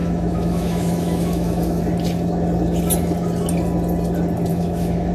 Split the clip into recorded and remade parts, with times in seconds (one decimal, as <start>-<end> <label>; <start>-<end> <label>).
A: 0.0-1.8 remade; 1.8-4.5 recorded; 4.5-5.1 remade